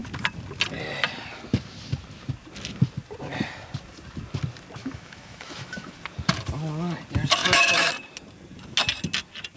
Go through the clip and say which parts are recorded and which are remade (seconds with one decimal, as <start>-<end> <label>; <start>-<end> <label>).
0.0-4.8 recorded; 4.8-5.9 remade; 5.9-7.4 recorded; 7.4-7.9 remade; 7.9-9.6 recorded